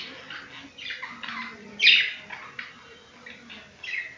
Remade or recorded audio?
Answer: recorded